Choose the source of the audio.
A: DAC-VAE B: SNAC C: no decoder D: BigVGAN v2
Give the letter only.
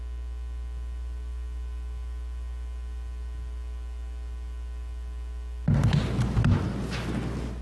C